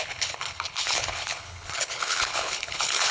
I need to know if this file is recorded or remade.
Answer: remade